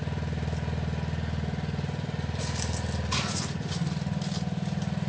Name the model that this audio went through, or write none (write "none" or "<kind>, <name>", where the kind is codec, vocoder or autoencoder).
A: none